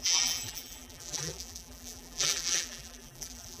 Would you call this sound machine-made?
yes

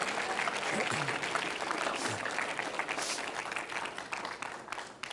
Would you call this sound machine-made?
no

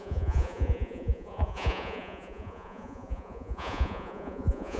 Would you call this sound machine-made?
yes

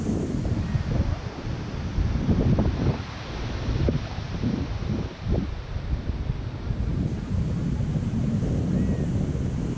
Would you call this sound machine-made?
no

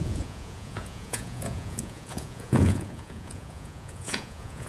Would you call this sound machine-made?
yes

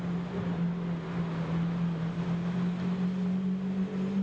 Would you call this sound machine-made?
no